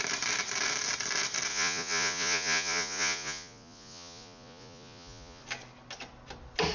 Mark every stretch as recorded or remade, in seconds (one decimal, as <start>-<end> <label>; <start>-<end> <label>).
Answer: 0.0-1.5 recorded; 1.5-5.4 remade; 5.4-6.7 recorded